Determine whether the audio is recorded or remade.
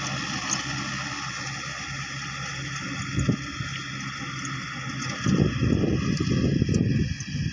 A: recorded